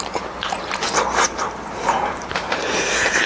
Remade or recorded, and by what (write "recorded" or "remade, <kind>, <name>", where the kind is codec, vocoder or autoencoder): remade, vocoder, BigVGAN v2